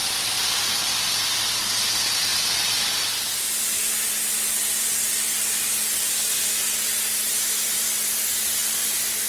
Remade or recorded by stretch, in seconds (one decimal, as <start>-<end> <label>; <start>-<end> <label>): 0.0-9.3 recorded